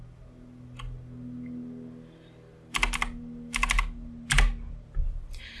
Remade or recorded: recorded